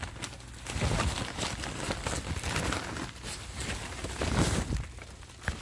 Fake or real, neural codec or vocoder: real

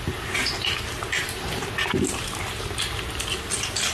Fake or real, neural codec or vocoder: real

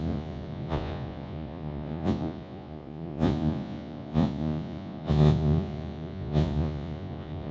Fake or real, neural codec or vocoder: fake, vocoder, Vocos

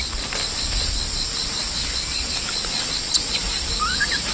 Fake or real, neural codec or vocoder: real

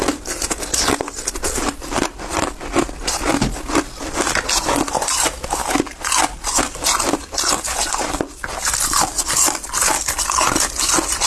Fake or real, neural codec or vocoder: real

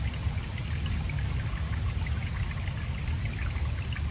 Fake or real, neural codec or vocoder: real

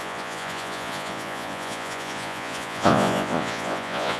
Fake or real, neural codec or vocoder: fake, vocoder, Vocos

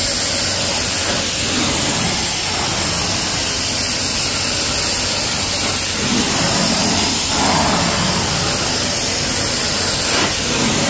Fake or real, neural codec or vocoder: real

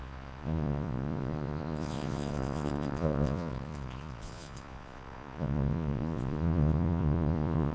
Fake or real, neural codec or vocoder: fake, vocoder, Vocos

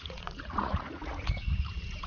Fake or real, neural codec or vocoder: fake, vocoder, Vocos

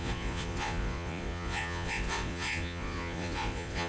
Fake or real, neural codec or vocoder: fake, vocoder, Vocos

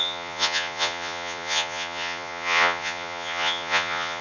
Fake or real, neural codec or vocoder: fake, vocoder, Vocos